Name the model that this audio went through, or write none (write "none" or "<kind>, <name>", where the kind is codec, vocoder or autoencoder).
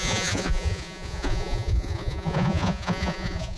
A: vocoder, Vocos